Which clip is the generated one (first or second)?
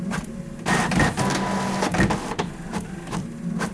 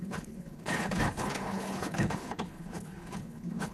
second